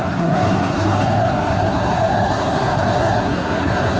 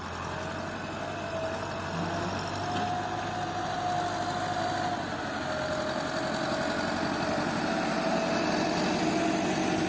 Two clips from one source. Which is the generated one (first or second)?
first